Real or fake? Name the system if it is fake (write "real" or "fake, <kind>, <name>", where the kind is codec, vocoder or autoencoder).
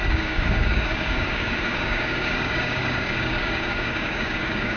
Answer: fake, codec, DAC